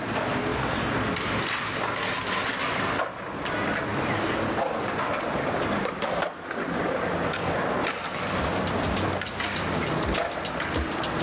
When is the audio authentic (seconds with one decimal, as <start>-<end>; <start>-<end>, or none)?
0.0-11.2